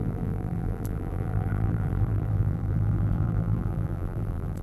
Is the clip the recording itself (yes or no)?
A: no